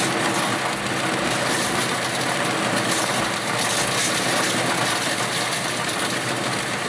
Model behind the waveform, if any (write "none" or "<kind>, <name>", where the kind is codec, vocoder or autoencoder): none